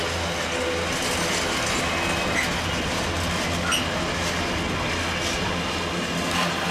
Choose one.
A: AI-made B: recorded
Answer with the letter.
B